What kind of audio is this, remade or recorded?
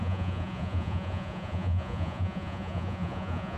remade